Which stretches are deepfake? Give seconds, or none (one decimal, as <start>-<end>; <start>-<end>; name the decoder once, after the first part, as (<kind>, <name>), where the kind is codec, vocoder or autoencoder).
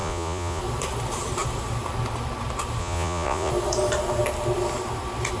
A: 0.0-0.6 (vocoder, Vocos); 2.8-3.5